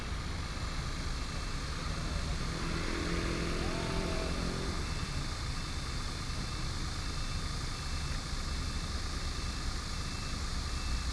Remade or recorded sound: recorded